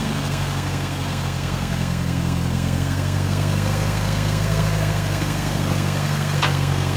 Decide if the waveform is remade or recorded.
remade